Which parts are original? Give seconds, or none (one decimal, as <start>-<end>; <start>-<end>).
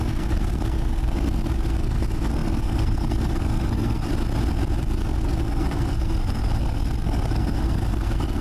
4.1-4.8